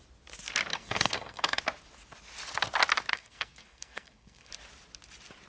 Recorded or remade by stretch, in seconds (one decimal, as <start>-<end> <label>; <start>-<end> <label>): 0.0-0.7 recorded; 0.7-1.6 remade; 1.6-3.1 recorded; 3.1-4.5 remade; 4.5-5.5 recorded